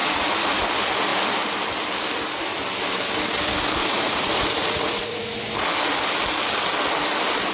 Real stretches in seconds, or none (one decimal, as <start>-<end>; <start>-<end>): 0.6-3.8; 5.3-7.5